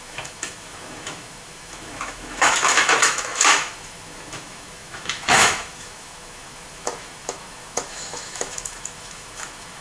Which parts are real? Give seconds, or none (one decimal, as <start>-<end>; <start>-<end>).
none